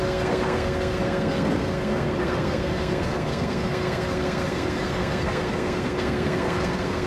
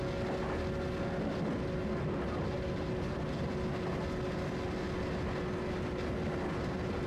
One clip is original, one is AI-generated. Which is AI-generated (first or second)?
first